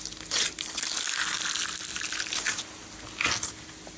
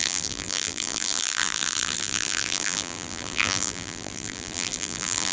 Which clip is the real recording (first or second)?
first